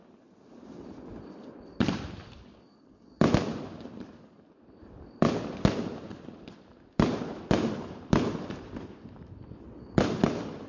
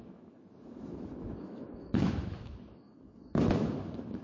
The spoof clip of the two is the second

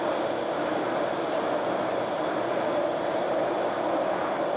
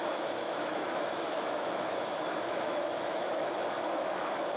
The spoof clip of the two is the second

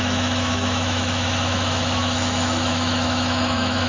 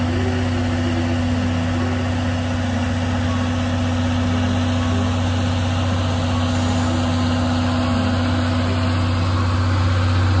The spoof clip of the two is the first